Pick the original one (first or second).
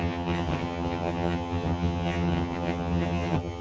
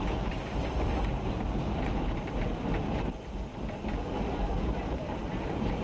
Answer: second